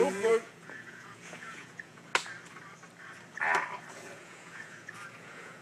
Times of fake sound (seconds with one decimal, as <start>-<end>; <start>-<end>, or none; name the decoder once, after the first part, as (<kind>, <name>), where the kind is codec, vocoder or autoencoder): 0.0-2.1 (vocoder, Vocos); 3.9-5.6